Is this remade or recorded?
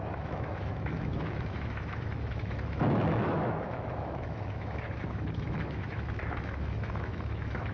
remade